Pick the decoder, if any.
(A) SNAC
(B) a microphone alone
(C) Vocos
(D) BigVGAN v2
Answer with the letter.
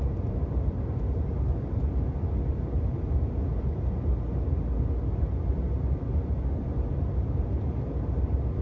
B